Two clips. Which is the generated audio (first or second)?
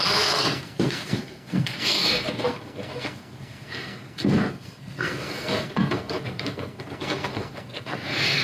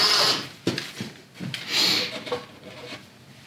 first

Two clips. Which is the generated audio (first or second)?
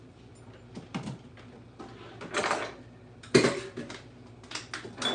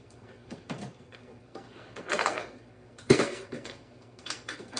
second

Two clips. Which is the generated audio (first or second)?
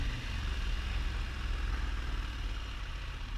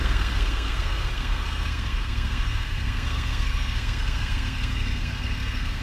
second